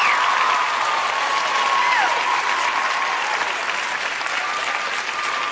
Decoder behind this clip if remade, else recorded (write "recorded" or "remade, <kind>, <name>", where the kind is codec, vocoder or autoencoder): recorded